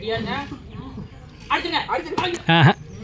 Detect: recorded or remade recorded